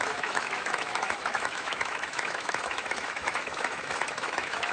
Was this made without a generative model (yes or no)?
no